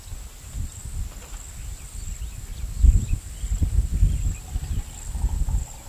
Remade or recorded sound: recorded